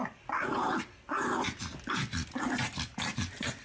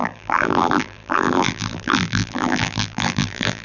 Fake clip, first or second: second